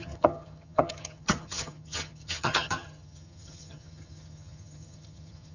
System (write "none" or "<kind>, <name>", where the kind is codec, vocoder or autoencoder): vocoder, HiFi-GAN